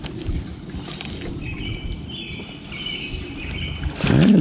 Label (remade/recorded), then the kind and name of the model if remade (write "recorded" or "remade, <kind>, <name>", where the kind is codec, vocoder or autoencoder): recorded